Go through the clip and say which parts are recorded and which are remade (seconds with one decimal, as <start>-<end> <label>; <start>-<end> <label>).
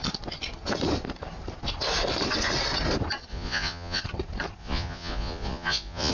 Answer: 0.0-3.3 recorded; 3.3-4.0 remade; 4.0-4.6 recorded; 4.6-6.1 remade